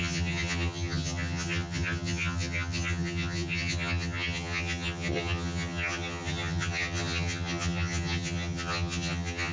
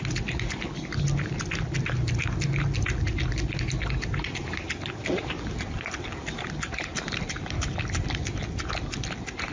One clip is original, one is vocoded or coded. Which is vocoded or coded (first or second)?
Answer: first